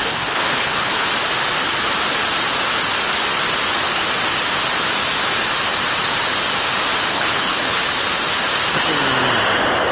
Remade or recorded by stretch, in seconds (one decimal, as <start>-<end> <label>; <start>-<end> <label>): 0.0-1.1 remade; 1.1-7.1 recorded; 7.1-7.8 remade; 7.8-9.9 recorded